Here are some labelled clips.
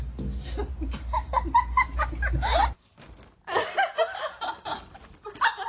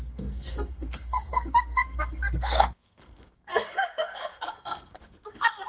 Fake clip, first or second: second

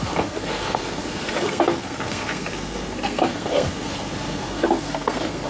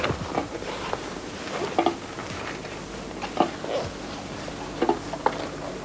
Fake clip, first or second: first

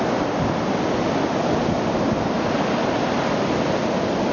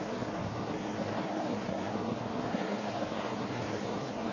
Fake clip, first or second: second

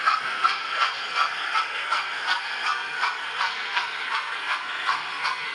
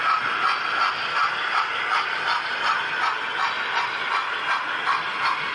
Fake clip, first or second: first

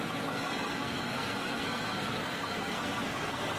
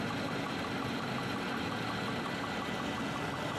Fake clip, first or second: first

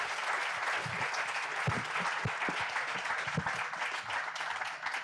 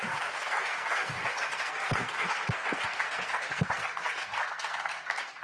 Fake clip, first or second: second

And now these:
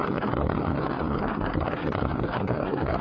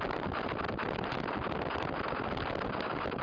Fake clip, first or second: first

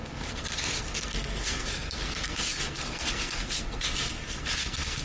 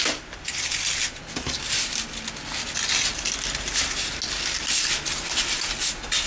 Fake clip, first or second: first